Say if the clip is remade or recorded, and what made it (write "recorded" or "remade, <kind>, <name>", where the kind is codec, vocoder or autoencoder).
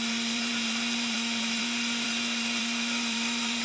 remade, vocoder, BigVGAN v2